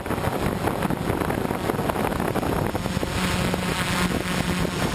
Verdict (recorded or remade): recorded